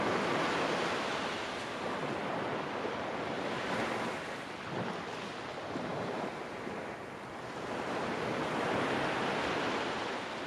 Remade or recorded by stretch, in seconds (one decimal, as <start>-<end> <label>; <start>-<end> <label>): 0.0-10.5 recorded

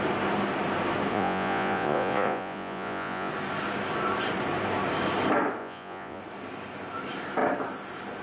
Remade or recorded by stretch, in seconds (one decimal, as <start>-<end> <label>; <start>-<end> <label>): 0.0-1.1 recorded; 1.1-3.3 remade; 3.3-5.6 recorded; 5.6-6.2 remade; 6.2-8.2 recorded

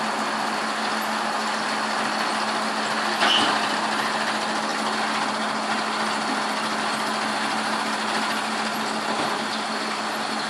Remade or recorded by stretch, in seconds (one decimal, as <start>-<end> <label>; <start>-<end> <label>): 0.0-10.5 recorded